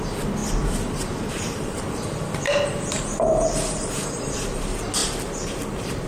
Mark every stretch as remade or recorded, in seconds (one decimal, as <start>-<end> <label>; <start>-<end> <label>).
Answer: 0.0-0.4 recorded; 0.4-4.1 remade; 4.1-6.1 recorded